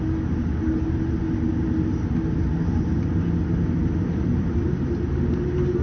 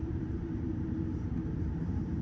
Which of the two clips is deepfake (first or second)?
second